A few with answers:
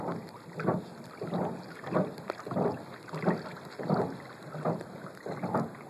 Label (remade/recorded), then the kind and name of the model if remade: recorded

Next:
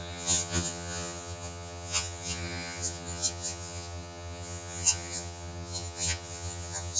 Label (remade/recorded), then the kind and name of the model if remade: remade, vocoder, HiFi-GAN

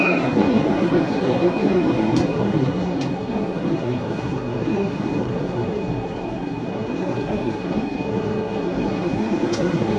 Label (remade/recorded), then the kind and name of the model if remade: remade, codec, SNAC